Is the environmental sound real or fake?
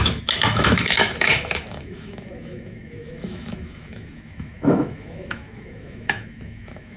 fake